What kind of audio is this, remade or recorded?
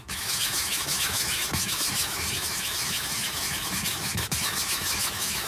remade